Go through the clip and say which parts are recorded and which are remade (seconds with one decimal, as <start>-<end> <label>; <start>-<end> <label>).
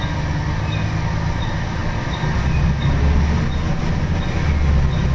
0.0-5.1 recorded